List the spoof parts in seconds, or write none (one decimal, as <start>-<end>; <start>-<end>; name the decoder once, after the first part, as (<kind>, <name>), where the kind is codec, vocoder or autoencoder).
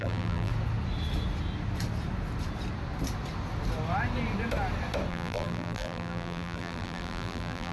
0.0-0.5 (vocoder, BigVGAN v2); 5.1-7.7